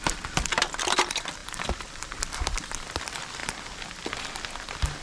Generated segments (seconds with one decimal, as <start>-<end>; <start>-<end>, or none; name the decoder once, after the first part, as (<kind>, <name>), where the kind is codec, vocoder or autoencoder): 0.0-5.0 (vocoder, BigVGAN v2)